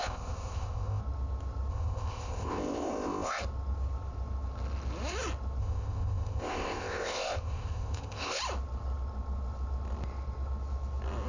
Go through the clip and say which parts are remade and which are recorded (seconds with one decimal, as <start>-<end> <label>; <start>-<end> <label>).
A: 0.0-1.0 remade; 1.0-1.7 recorded; 1.7-3.4 remade; 3.4-5.6 recorded; 5.6-8.4 remade; 8.4-11.3 recorded